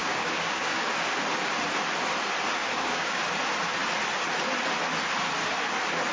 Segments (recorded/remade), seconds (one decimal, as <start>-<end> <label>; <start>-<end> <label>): 0.0-0.9 remade; 0.9-2.6 recorded; 2.6-3.2 remade; 3.2-6.1 recorded